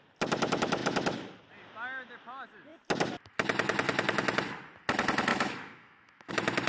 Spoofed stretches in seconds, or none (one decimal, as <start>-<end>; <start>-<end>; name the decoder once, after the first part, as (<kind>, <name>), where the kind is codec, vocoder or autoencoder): 5.3-6.3 (autoencoder, DAC-VAE)